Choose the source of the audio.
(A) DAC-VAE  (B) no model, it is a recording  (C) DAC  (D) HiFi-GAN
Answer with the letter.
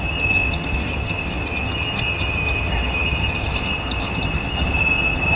D